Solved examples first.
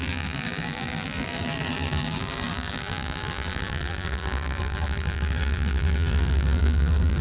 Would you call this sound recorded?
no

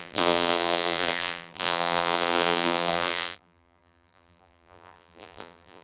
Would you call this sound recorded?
no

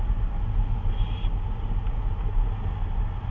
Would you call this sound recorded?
yes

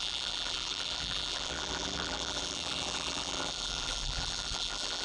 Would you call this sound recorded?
no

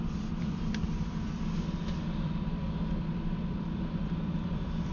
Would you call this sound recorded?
no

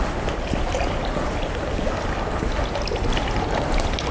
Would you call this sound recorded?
yes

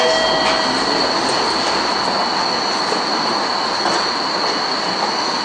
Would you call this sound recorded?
yes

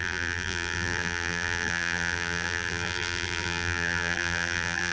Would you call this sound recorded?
no